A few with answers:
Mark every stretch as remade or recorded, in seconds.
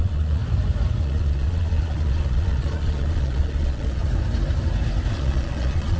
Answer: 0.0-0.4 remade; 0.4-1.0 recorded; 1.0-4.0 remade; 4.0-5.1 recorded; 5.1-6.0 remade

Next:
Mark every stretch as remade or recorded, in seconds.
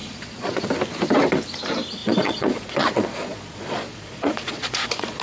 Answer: 0.0-0.7 remade; 0.7-2.0 recorded; 2.0-5.2 remade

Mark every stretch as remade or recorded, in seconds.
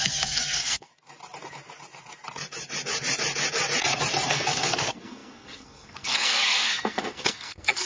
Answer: 0.0-0.9 remade; 0.9-4.3 recorded; 4.3-7.9 remade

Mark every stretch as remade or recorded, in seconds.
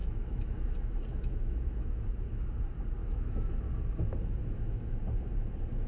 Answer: 0.0-0.7 remade; 0.7-1.1 recorded; 1.1-2.5 remade; 2.5-3.0 recorded; 3.0-3.5 remade; 3.5-4.4 recorded; 4.4-5.0 remade; 5.0-5.9 recorded